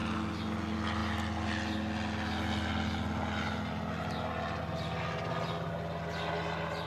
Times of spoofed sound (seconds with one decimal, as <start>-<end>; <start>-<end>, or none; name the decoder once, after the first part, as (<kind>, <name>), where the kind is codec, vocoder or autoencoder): none